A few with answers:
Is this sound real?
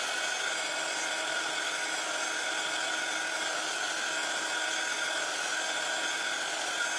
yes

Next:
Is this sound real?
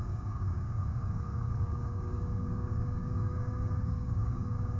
no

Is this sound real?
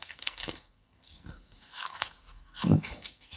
no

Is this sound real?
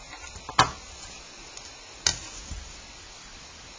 yes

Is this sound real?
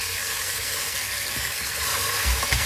no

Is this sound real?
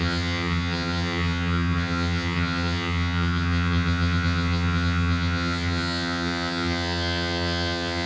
no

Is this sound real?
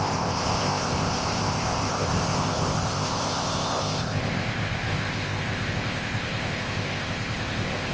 no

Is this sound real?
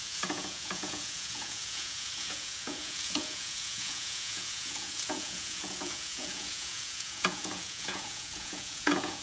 no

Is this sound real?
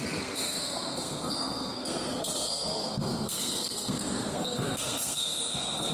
no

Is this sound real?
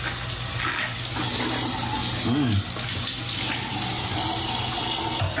yes